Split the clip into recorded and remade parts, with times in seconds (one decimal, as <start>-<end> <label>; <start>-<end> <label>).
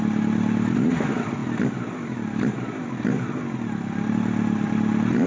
0.0-5.3 recorded